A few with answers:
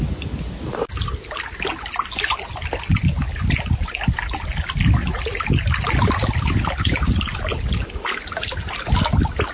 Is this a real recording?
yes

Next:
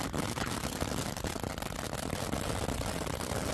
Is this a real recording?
yes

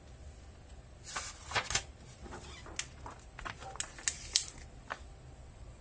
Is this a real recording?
yes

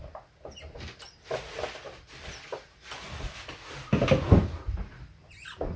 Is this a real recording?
yes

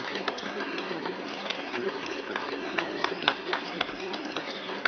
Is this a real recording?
no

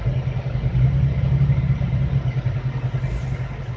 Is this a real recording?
yes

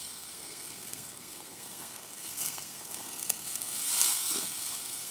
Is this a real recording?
no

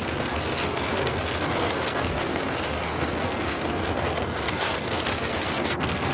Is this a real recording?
no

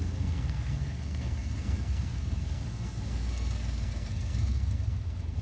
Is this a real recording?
no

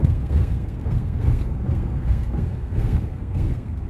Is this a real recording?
no